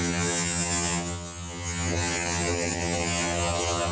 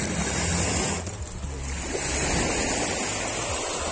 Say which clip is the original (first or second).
second